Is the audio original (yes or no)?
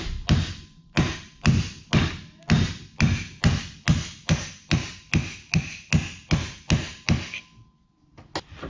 yes